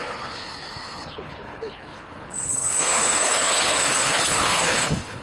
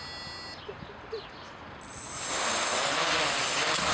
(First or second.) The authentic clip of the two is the second